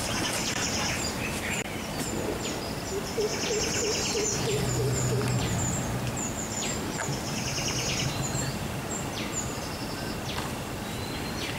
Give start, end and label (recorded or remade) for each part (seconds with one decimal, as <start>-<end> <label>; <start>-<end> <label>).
0.0-0.4 recorded; 0.4-2.1 remade; 2.1-7.0 recorded; 7.0-9.9 remade; 9.9-11.6 recorded